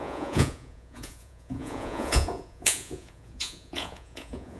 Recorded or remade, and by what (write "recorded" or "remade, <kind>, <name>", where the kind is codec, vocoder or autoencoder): remade, vocoder, Vocos